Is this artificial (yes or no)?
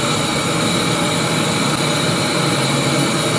no